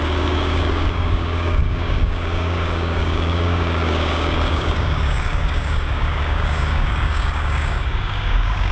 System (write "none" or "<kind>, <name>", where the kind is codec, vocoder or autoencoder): codec, DAC